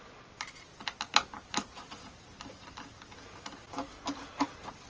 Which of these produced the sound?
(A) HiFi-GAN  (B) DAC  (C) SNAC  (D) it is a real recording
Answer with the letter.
D